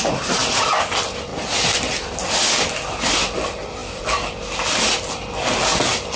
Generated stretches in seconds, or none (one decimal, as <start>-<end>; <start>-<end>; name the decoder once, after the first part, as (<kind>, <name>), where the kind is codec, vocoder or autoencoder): none